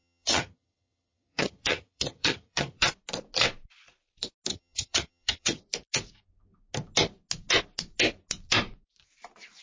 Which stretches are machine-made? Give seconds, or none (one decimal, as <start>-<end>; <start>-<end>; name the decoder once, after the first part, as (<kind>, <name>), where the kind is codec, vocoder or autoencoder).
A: 0.0-2.9 (vocoder, HiFi-GAN); 4.5-5.6